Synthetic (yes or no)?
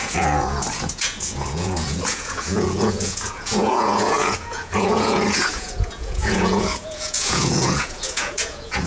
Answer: yes